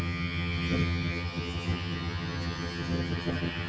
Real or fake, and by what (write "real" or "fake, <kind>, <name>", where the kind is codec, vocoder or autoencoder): fake, vocoder, HiFi-GAN